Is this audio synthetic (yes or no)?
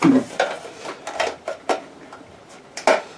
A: no